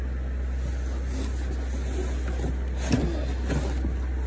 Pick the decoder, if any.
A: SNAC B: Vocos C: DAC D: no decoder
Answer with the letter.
D